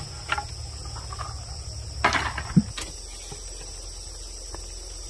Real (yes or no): yes